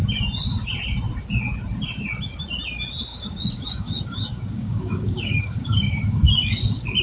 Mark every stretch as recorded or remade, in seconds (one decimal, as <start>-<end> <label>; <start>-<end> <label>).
0.0-3.1 recorded; 3.1-7.0 remade